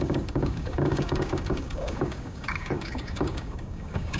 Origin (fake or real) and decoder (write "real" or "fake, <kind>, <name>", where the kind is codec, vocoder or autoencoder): fake, codec, DAC